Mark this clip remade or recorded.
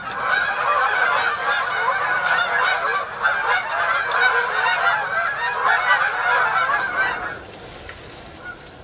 recorded